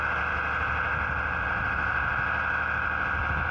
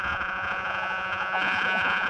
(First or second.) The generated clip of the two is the second